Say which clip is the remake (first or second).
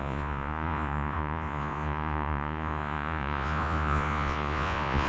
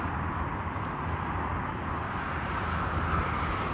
first